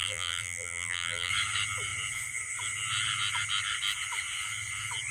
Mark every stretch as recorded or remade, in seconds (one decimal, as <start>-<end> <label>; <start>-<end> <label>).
0.0-1.3 remade; 1.3-5.1 recorded